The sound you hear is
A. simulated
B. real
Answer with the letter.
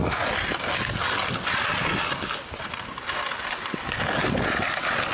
B